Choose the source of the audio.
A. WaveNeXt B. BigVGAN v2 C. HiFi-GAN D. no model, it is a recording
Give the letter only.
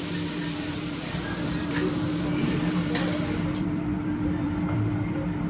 B